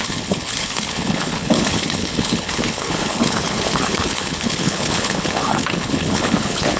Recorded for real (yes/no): no